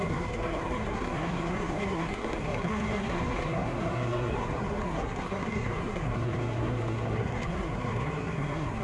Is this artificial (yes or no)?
yes